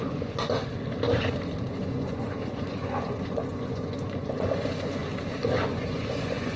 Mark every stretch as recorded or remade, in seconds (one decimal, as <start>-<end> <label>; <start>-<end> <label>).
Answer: 0.0-0.6 remade; 0.6-1.7 recorded; 1.7-5.0 remade; 5.0-5.6 recorded; 5.6-6.6 remade